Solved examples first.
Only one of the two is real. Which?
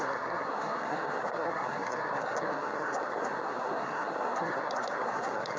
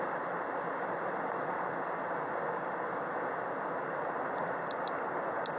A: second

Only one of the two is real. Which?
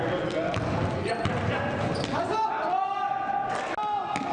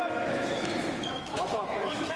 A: first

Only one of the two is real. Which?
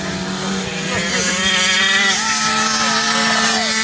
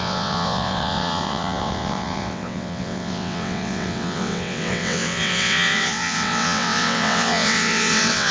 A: first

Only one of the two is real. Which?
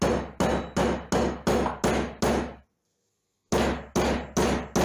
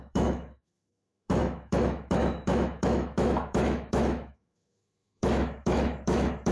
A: first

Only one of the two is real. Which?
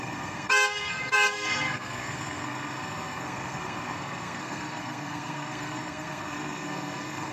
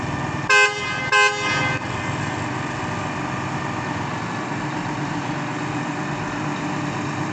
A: second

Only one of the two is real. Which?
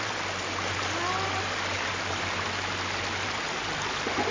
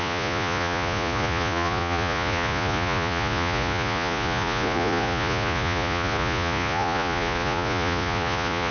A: first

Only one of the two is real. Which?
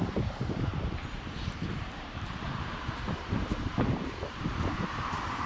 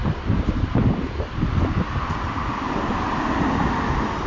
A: second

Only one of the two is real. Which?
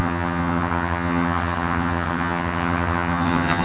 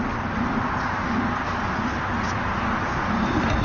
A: second